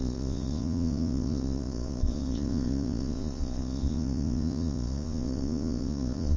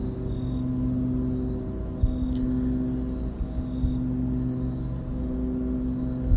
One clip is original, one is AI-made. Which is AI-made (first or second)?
first